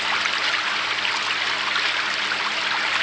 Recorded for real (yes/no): yes